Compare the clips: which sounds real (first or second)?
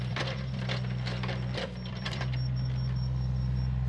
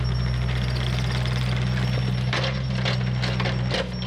second